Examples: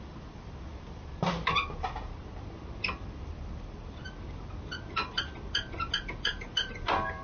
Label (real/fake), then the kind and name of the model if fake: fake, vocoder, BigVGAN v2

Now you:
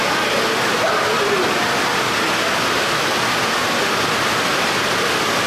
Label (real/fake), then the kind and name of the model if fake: real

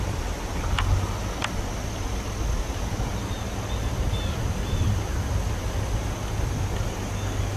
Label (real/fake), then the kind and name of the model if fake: real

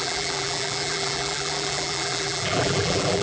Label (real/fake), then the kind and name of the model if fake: fake, vocoder, BigVGAN v2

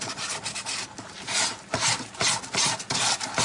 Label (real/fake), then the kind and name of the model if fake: real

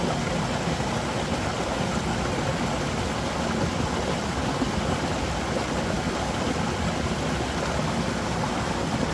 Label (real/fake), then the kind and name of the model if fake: real